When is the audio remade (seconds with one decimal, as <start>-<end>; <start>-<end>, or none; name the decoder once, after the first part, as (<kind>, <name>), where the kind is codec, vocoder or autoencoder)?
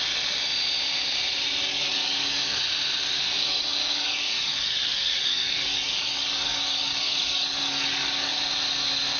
1.7-2.6 (codec, DAC); 3.4-8.4